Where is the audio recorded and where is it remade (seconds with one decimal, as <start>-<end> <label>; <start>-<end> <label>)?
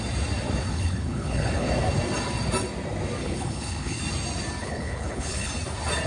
0.0-0.7 recorded; 0.7-1.7 remade; 1.7-3.2 recorded; 3.2-4.0 remade; 4.0-4.6 recorded; 4.6-5.5 remade; 5.5-6.1 recorded